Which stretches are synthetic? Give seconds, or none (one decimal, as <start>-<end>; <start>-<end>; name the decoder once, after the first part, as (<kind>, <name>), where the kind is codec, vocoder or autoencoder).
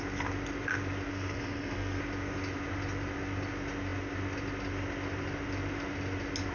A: 1.1-2.0 (codec, SNAC)